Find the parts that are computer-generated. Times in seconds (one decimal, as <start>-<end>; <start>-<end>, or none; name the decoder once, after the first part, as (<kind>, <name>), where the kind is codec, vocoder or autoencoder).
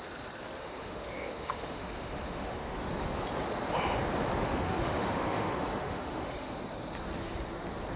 0.6-2.9 (autoencoder, DAC-VAE); 4.4-6.5